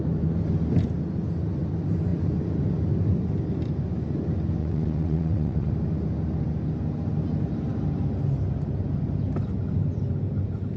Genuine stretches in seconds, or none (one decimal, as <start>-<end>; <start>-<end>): 0.0-4.6; 5.7-10.8